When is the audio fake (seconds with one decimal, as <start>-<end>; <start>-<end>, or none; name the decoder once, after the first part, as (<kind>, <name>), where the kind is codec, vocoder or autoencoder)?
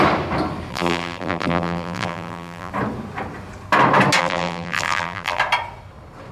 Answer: 0.7-2.7 (vocoder, BigVGAN v2); 4.2-5.4